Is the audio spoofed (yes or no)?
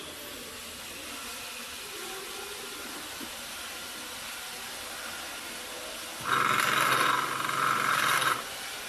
no